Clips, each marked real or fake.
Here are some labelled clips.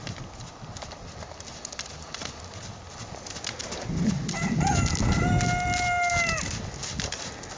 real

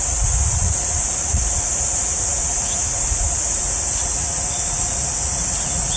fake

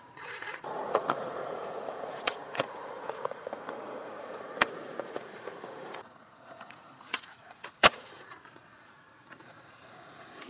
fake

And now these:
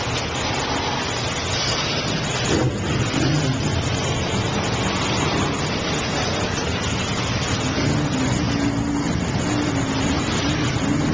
real